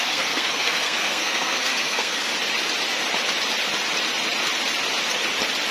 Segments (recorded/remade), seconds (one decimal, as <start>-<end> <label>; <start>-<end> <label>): 0.0-2.3 remade; 2.3-5.7 recorded